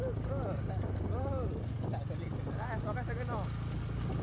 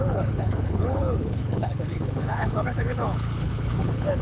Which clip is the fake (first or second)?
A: second